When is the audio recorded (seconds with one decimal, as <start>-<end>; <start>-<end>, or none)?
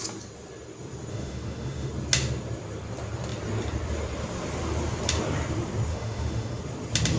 0.0-1.1; 1.9-5.9; 6.6-7.2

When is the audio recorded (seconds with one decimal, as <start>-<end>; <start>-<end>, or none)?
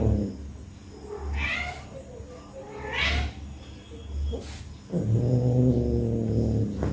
0.0-6.9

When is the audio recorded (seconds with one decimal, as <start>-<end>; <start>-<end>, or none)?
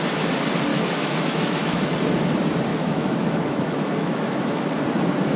0.0-0.7; 1.9-2.7; 4.8-5.4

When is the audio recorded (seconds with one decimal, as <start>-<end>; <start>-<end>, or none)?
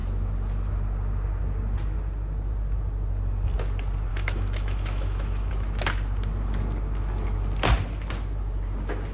0.0-4.1; 5.5-9.1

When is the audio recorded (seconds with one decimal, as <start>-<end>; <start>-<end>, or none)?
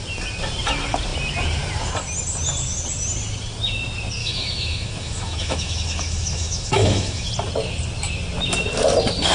0.0-4.2; 7.3-9.3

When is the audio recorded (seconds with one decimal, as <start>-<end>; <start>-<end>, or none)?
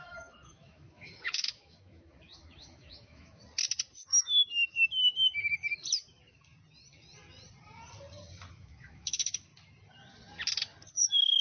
3.4-3.9; 5.6-8.5; 9.5-10.9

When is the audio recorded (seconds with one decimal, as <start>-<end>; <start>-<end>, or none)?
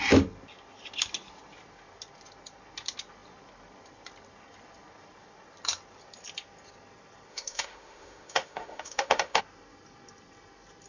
0.0-7.3; 9.4-10.9